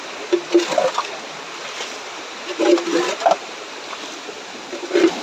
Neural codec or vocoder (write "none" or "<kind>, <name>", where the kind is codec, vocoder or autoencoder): none